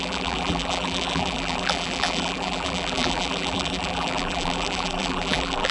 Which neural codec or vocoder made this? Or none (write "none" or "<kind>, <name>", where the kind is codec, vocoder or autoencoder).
vocoder, BigVGAN v2